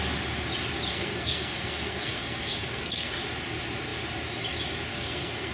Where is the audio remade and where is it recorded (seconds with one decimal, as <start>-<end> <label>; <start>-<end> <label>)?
0.0-0.9 recorded; 0.9-3.2 remade; 3.2-4.9 recorded; 4.9-5.5 remade